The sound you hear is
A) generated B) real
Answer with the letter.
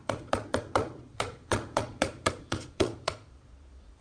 A